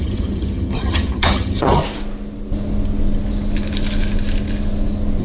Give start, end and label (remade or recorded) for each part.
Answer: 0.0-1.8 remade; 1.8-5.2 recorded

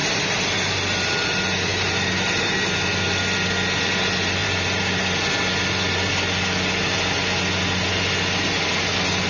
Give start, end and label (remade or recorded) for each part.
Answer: 0.0-1.7 recorded; 1.7-2.5 remade; 2.5-4.4 recorded; 4.4-5.0 remade; 5.0-9.3 recorded

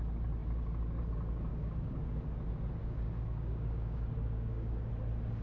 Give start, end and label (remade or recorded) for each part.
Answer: 0.0-1.5 recorded; 1.5-2.0 remade; 2.0-2.8 recorded; 2.8-4.9 remade; 4.9-5.4 recorded

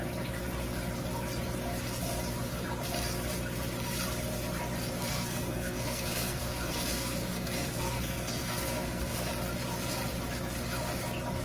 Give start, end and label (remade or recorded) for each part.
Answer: 0.0-4.9 recorded; 4.9-9.3 remade; 9.3-11.4 recorded